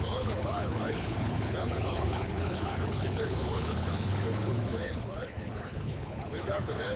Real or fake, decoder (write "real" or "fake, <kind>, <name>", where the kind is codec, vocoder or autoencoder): fake, codec, HILCodec